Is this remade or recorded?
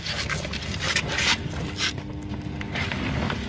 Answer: recorded